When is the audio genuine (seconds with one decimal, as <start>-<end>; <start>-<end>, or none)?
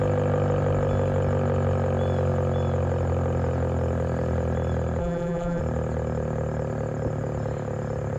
0.0-5.0; 5.6-8.2